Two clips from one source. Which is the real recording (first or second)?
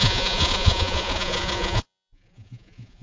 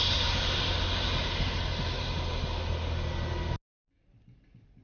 second